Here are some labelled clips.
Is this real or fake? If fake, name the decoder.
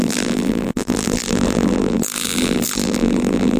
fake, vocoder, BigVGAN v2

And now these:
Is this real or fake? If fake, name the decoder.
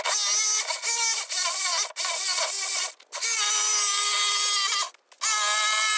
real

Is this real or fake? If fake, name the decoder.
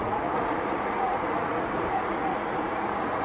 fake, vocoder, Vocos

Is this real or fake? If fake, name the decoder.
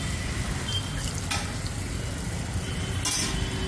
real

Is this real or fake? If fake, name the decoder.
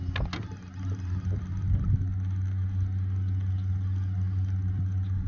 real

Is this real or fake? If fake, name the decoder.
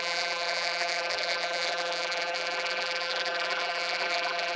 fake, vocoder, BigVGAN v2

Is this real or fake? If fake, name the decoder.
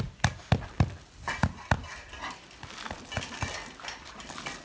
real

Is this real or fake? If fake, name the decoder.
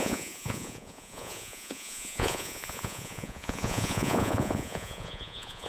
fake, vocoder, Vocos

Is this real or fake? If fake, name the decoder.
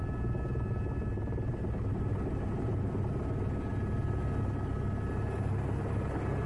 real